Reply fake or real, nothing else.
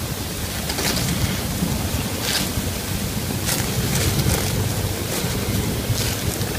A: real